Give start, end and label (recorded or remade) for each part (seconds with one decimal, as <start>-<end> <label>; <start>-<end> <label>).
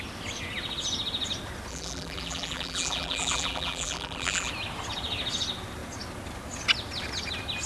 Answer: 0.0-1.7 recorded; 1.7-4.5 remade; 4.5-7.7 recorded